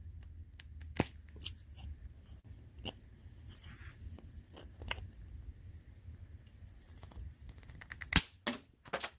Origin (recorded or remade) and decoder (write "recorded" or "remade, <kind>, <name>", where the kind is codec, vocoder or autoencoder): recorded